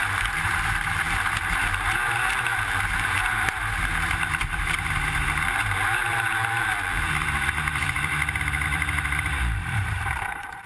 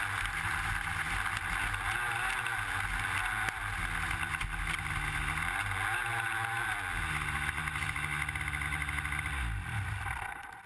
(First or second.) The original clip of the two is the second